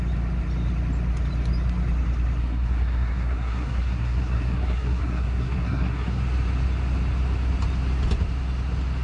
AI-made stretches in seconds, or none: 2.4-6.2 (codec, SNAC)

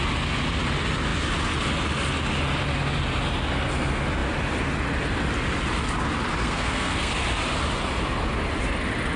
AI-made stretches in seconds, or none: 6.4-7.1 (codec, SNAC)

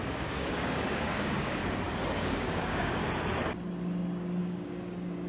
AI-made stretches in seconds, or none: 0.0-1.6 (codec, DAC); 2.2-3.0; 4.4-5.3

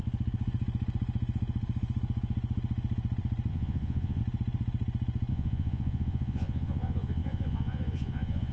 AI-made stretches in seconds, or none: 3.5-4.2 (vocoder, Vocos); 5.3-8.5

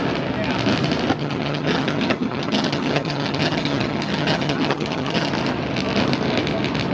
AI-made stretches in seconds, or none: 1.2-5.3 (vocoder, HiFi-GAN)